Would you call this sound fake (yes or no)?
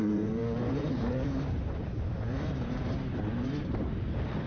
yes